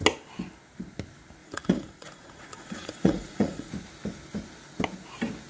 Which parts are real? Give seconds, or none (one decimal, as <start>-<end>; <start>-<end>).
0.0-1.4; 3.7-5.5